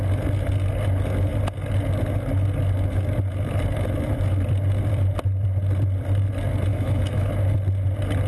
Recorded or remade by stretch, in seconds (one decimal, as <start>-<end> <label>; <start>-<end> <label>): 0.0-6.7 recorded; 6.7-7.3 remade; 7.3-8.3 recorded